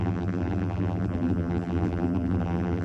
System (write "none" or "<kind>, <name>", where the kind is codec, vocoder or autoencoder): vocoder, BigVGAN v2